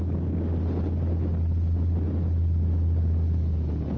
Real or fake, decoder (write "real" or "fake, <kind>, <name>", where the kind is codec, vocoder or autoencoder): real